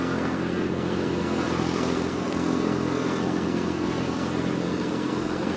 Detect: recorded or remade remade